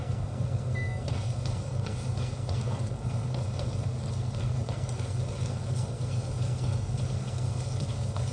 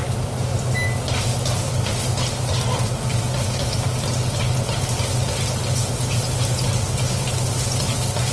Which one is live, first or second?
second